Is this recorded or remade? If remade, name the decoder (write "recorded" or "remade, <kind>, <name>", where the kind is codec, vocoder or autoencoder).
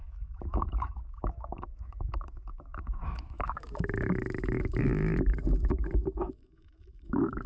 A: remade, autoencoder, DAC-VAE